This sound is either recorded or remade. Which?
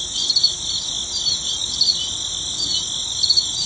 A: recorded